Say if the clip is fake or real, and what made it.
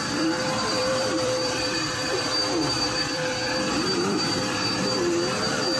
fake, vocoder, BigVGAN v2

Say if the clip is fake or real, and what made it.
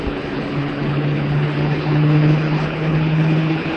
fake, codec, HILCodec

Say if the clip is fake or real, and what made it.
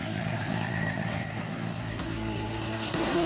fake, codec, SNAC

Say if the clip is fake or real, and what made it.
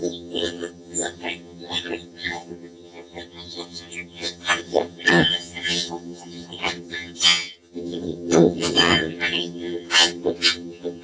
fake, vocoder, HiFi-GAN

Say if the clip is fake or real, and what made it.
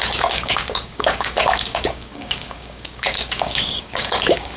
fake, codec, DAC